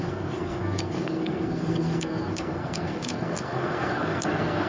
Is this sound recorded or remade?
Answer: remade